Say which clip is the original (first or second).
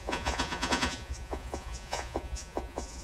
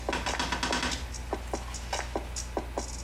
second